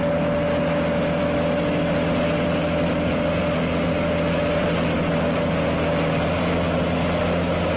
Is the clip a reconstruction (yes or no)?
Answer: no